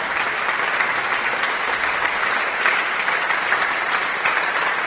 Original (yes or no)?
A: yes